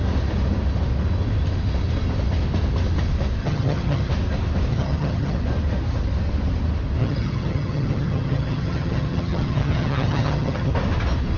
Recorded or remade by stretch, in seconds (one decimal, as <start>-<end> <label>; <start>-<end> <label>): 0.0-3.4 recorded; 3.4-4.1 remade; 4.1-4.7 recorded; 4.7-5.4 remade; 5.4-7.0 recorded; 7.0-10.7 remade; 10.7-11.4 recorded